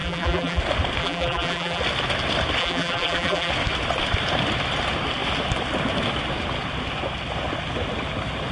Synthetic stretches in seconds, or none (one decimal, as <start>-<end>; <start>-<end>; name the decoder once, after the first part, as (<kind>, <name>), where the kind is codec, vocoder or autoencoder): 0.0-0.6 (vocoder, BigVGAN v2); 1.0-1.8; 2.6-3.5